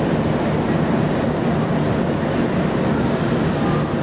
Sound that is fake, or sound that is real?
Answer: real